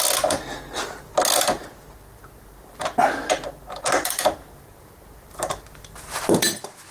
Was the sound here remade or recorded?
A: recorded